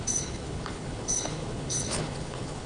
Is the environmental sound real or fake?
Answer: fake